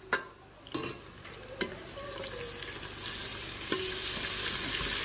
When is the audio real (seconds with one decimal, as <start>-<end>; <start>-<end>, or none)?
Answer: 0.0-5.0